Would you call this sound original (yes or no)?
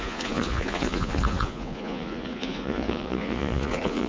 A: no